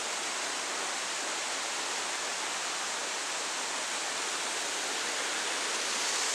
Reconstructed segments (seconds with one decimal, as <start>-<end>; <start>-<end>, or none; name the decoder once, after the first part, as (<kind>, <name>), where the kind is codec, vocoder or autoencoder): 1.4-2.3 (vocoder, BigVGAN v2); 3.0-4.1